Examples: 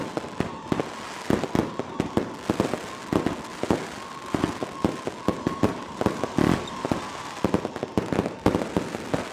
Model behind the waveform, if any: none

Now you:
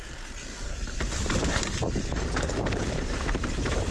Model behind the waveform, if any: vocoder, BigVGAN v2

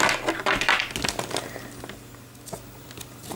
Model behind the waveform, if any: none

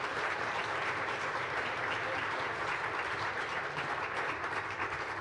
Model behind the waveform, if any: vocoder, BigVGAN v2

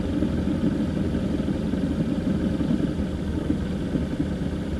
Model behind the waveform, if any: vocoder, BigVGAN v2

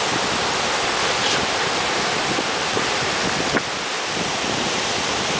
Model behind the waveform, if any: none